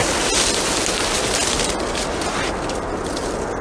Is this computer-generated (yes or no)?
no